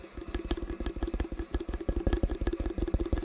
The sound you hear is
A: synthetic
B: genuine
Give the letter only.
B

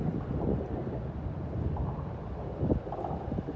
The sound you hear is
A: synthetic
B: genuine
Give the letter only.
B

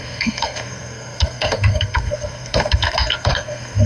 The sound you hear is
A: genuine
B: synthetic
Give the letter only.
B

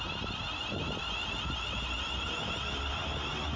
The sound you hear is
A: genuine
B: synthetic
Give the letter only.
A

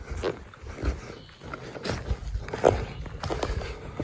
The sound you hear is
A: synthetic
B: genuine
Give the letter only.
B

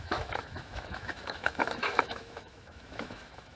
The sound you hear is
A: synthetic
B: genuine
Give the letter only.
A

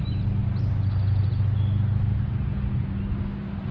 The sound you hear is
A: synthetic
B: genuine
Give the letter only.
B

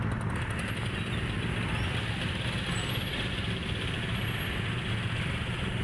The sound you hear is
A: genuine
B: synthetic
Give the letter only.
A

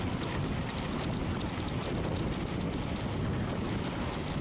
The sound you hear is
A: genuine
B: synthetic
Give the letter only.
A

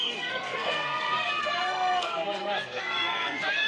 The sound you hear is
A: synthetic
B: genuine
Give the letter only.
A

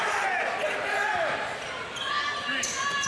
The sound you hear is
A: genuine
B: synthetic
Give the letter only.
A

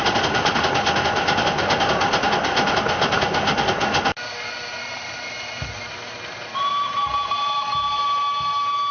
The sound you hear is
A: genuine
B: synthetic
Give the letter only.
A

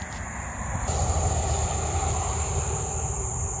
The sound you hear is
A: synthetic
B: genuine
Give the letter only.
B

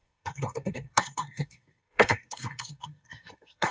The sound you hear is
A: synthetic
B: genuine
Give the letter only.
A